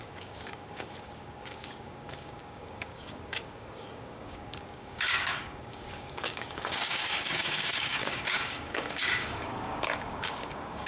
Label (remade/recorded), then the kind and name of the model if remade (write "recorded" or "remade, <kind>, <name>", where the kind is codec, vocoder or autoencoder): remade, codec, DAC